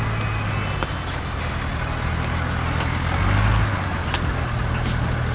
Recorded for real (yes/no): yes